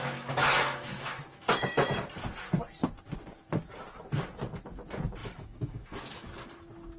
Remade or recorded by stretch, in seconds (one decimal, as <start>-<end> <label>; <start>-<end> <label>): 0.0-2.0 remade; 2.0-5.2 recorded; 5.2-6.3 remade; 6.3-7.0 recorded